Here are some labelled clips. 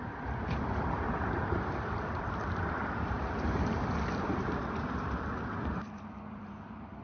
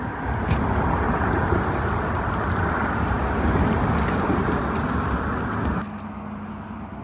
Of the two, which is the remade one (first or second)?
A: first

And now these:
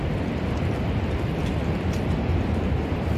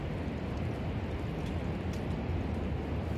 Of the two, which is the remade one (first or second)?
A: first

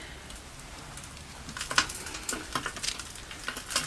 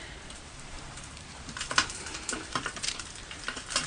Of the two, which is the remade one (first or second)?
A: second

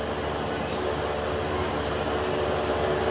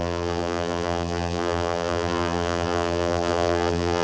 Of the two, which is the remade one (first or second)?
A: second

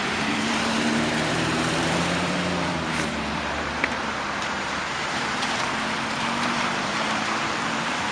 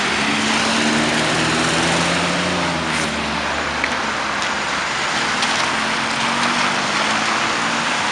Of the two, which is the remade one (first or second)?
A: first